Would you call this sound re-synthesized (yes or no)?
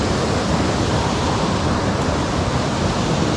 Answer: no